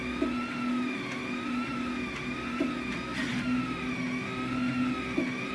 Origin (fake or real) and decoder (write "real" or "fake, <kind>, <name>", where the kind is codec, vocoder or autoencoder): real